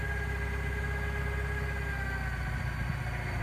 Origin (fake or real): real